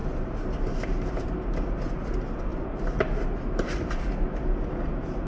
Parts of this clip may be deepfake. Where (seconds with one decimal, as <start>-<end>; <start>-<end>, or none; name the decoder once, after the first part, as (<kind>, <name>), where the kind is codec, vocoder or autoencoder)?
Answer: 0.0-1.7 (vocoder, BigVGAN v2); 2.5-3.8